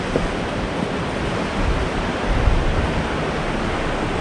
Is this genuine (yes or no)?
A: yes